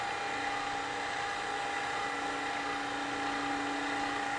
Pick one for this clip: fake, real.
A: real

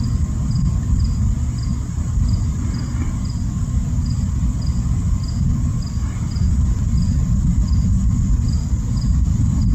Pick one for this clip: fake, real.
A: real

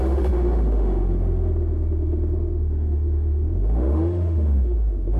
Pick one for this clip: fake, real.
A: fake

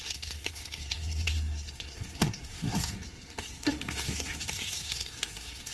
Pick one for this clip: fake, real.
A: fake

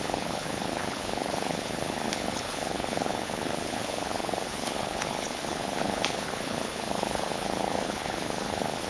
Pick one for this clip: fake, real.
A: fake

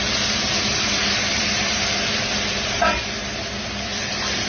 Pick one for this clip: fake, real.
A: real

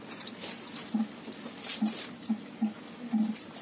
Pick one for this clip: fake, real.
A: real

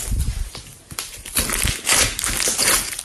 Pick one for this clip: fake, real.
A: real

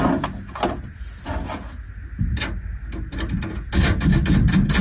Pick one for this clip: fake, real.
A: real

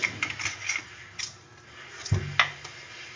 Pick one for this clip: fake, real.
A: real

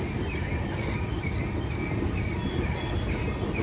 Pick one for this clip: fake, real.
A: real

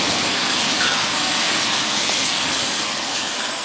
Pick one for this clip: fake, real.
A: fake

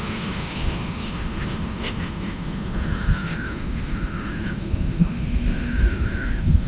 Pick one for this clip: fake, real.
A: fake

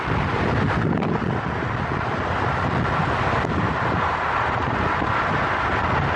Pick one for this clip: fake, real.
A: real